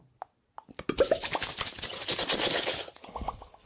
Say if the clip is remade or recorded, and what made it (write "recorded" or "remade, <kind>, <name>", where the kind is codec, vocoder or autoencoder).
recorded